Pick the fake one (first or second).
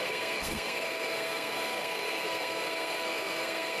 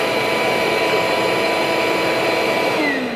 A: first